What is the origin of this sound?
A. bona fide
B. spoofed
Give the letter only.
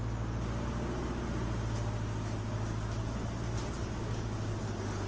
A